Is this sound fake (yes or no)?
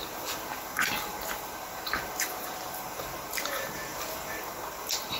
yes